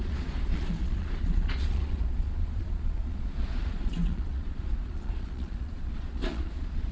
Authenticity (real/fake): fake